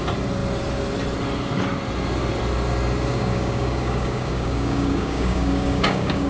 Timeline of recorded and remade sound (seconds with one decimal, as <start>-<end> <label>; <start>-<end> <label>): 0.0-3.1 recorded; 3.1-6.3 remade